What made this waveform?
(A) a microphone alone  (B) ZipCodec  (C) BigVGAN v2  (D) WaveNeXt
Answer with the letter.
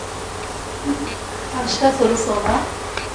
A